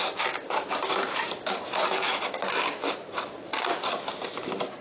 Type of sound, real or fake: fake